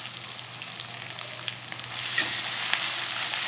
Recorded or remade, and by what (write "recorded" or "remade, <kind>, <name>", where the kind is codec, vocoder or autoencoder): recorded